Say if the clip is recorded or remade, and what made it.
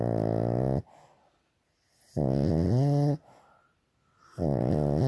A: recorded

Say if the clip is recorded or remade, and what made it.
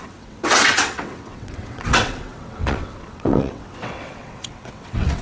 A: remade, vocoder, WaveNeXt